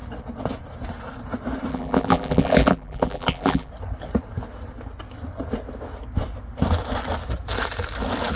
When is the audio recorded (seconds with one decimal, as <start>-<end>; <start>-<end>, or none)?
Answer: 0.0-1.7; 3.7-8.4